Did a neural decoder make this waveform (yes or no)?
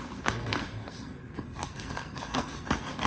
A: yes